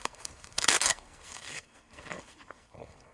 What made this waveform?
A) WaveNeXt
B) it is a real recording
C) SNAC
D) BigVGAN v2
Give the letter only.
C